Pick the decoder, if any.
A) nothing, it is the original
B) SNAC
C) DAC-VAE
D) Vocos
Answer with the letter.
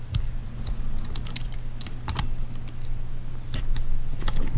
A